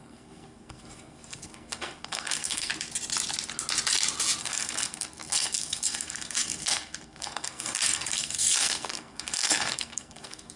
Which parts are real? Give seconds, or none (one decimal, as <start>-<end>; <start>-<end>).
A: 2.7-4.4

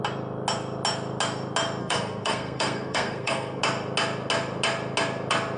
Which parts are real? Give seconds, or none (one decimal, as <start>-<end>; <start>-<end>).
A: 0.0-1.8; 3.6-5.6

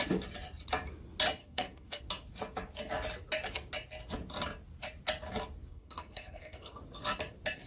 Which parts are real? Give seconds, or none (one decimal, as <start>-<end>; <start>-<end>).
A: 0.0-1.4; 2.0-5.7; 6.8-7.7